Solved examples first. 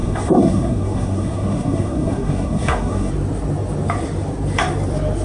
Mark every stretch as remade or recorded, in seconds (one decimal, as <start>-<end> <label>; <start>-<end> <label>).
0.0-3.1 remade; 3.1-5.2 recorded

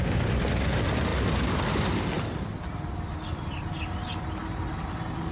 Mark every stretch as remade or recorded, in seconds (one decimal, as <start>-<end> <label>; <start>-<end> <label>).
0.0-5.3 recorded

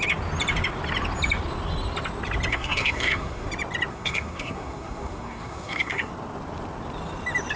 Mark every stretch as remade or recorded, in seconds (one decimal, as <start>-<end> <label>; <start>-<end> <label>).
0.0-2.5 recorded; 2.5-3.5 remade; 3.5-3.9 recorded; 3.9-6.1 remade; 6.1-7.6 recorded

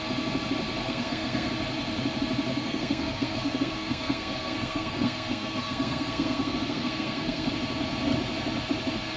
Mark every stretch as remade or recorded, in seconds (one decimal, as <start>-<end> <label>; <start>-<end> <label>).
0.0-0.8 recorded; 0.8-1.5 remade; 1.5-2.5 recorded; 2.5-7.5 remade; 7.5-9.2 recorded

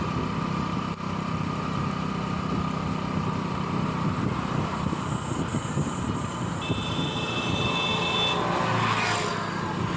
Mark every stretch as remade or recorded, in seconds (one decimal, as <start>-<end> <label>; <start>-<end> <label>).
0.0-10.0 recorded

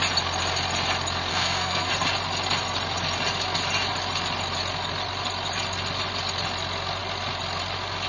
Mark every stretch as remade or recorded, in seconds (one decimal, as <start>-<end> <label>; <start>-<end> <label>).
0.0-1.3 recorded; 1.3-1.9 remade; 1.9-8.1 recorded

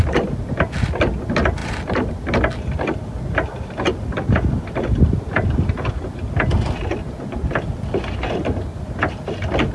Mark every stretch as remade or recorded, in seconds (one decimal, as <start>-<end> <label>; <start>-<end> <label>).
0.0-9.7 recorded